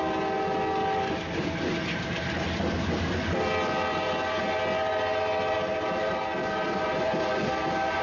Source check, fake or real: real